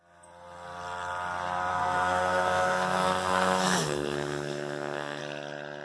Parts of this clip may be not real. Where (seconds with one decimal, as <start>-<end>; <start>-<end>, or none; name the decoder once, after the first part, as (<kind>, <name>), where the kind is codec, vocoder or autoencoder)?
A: 1.7-5.2 (codec, SNAC)